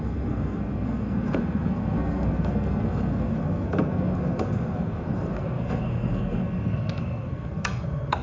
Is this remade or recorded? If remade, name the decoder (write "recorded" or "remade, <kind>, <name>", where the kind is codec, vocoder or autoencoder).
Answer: remade, codec, SNAC